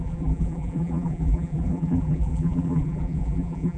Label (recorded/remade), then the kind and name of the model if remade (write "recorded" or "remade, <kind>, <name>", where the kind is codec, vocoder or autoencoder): remade, vocoder, BigVGAN v2